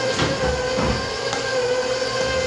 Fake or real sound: real